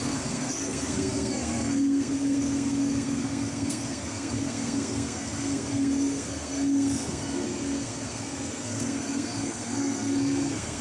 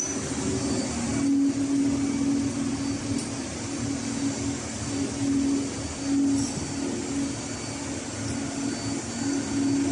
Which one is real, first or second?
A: second